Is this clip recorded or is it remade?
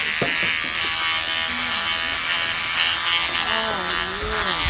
recorded